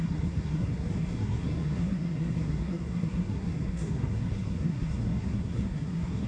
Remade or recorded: remade